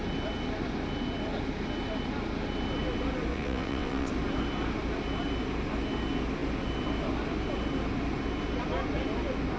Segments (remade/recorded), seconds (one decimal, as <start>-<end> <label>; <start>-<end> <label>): 0.0-3.3 recorded; 3.3-4.1 remade; 4.1-9.6 recorded